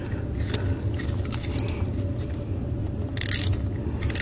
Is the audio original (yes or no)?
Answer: yes